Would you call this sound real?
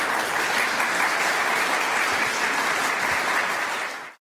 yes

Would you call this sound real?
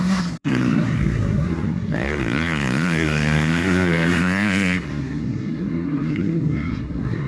no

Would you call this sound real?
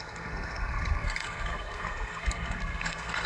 no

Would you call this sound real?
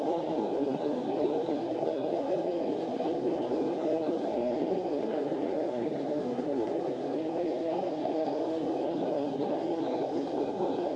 no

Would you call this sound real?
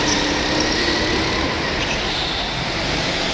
yes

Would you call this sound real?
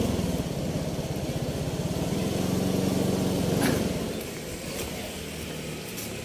yes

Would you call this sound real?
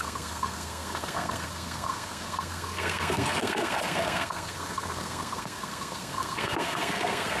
no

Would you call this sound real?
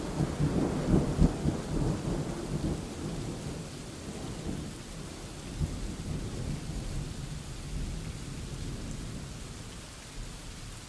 yes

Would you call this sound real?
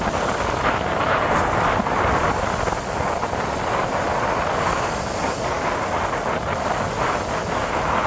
yes